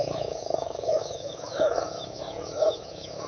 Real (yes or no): no